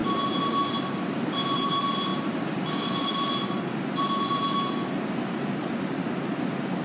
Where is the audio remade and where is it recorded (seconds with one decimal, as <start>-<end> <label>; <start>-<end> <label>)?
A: 0.0-2.1 recorded; 2.1-4.2 remade; 4.2-6.8 recorded